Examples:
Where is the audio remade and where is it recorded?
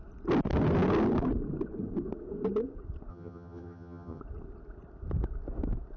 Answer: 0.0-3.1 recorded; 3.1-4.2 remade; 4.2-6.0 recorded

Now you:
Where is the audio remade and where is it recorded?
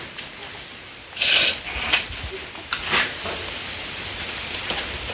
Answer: 0.0-5.1 recorded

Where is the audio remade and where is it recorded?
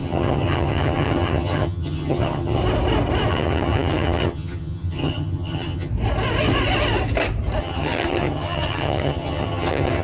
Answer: 0.0-2.6 remade; 2.6-3.3 recorded; 3.3-5.9 remade; 5.9-7.6 recorded; 7.6-10.0 remade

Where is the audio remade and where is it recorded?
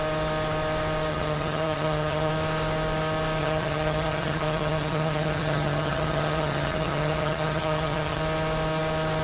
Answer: 0.0-1.1 recorded; 1.1-2.3 remade; 2.3-3.4 recorded; 3.4-8.2 remade; 8.2-9.2 recorded